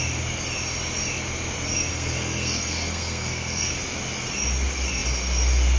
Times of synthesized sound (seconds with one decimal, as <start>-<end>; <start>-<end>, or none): 1.9-3.7